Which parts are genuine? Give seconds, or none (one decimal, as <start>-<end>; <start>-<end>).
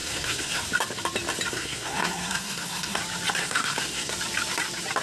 0.6-1.5; 3.0-3.4; 4.1-5.0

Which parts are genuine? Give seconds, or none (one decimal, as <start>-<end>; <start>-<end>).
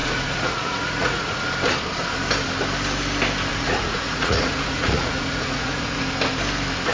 1.4-3.5; 6.0-6.9